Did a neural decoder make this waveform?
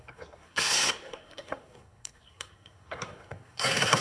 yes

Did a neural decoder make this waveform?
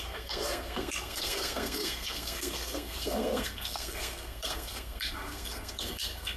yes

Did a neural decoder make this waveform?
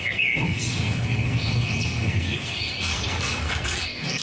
yes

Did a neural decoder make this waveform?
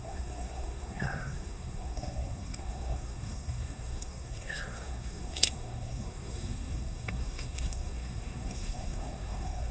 yes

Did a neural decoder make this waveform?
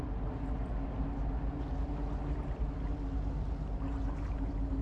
no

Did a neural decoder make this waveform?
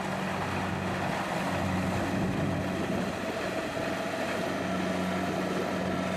no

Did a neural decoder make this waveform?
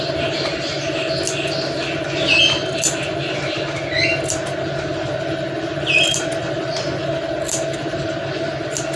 no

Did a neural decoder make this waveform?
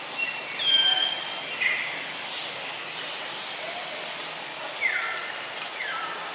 no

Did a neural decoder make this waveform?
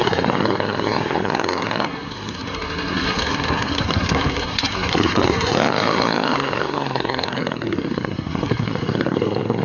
yes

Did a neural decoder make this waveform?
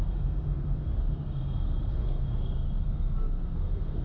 yes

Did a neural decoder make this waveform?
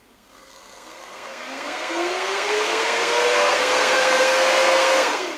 yes